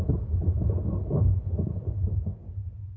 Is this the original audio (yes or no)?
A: yes